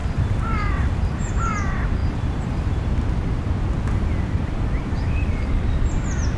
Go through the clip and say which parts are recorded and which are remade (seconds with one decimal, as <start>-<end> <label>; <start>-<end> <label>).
0.0-1.3 remade; 1.3-2.0 recorded; 2.0-5.5 remade; 5.5-6.4 recorded